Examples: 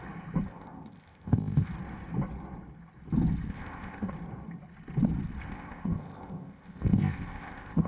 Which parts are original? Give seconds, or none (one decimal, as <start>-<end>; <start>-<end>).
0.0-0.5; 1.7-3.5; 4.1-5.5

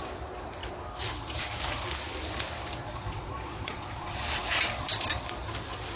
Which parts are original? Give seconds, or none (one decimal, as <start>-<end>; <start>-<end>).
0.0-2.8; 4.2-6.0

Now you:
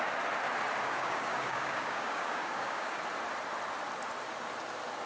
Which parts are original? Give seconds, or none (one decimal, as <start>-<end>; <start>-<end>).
0.0-0.8; 3.0-5.1

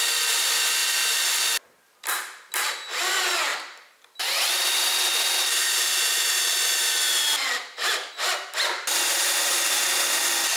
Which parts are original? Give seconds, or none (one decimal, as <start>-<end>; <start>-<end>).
0.0-10.6